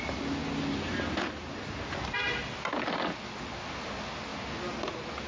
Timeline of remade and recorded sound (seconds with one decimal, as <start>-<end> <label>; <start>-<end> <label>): 0.0-5.3 recorded